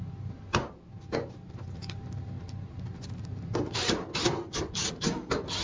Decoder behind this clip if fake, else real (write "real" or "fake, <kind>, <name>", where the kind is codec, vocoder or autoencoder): real